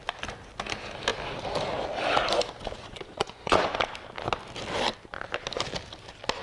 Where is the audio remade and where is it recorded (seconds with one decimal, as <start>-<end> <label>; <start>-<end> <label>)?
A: 0.0-2.8 recorded; 2.8-3.8 remade; 3.8-6.4 recorded